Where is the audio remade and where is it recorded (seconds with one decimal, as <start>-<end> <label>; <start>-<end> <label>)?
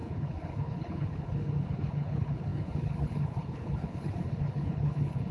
0.0-5.3 remade